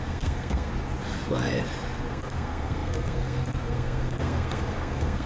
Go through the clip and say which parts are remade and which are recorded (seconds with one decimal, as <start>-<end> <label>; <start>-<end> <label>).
0.0-0.7 remade; 0.7-2.1 recorded; 2.1-5.3 remade

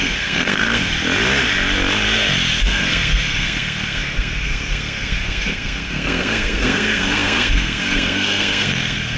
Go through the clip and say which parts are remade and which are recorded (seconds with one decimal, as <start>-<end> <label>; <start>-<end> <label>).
0.0-0.9 remade; 0.9-2.6 recorded; 2.6-9.2 remade

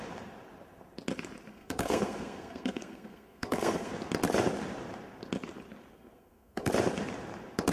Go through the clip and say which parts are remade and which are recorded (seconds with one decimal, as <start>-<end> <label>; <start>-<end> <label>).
0.0-1.5 recorded; 1.5-3.9 remade; 3.9-5.9 recorded; 5.9-6.7 remade; 6.7-7.7 recorded

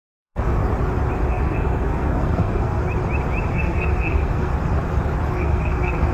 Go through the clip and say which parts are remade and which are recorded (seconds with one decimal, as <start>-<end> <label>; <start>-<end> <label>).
0.0-0.6 remade; 0.6-1.3 recorded; 1.3-2.8 remade; 2.8-3.5 recorded; 3.5-4.5 remade; 4.5-5.3 recorded; 5.3-6.1 remade

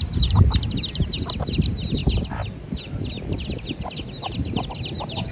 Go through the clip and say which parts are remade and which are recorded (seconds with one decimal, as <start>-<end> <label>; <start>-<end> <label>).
0.0-5.3 recorded

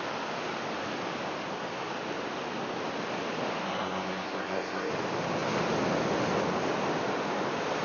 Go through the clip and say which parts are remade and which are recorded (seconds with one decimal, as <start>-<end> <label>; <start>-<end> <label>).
0.0-3.6 recorded; 3.6-4.9 remade; 4.9-7.8 recorded

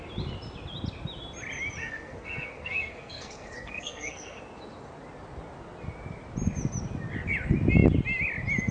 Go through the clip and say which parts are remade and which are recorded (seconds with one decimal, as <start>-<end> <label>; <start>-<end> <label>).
0.0-1.8 recorded; 1.8-4.4 remade; 4.4-8.7 recorded

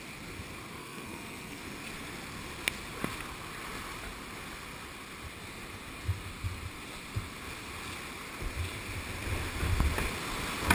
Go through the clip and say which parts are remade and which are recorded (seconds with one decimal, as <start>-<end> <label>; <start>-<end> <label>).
0.0-0.8 recorded; 0.8-1.6 remade; 1.6-10.7 recorded